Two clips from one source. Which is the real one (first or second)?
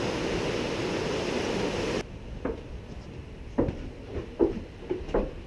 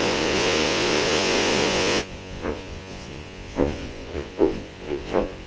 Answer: first